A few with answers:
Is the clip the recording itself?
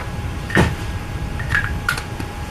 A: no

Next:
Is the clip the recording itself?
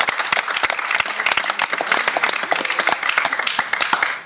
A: yes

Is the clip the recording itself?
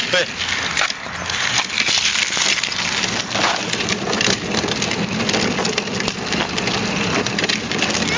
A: yes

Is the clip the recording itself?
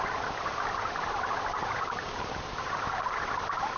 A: no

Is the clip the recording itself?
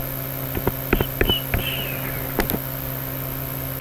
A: yes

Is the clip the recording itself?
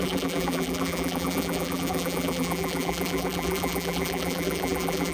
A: no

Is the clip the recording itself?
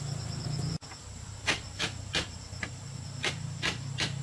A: no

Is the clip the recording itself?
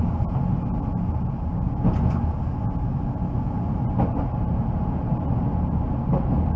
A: yes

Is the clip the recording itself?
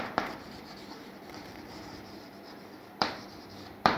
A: no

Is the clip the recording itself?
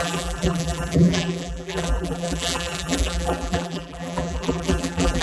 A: no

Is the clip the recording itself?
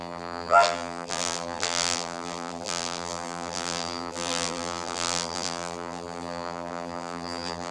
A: no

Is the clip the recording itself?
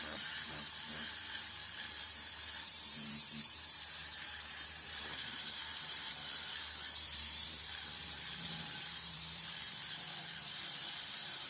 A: no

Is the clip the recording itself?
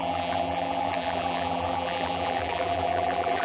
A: no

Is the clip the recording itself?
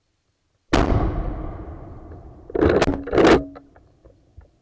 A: yes